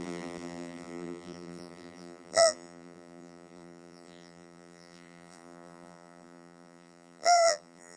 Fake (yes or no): yes